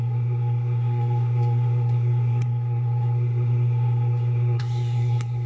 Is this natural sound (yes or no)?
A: no